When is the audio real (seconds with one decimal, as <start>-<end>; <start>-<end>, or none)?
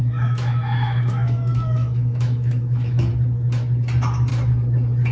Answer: 3.1-5.1